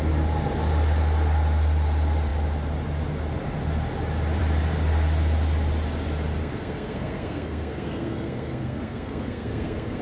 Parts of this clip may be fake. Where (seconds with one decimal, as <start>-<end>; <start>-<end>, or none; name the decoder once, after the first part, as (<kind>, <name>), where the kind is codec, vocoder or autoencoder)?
6.4-10.0 (codec, SNAC)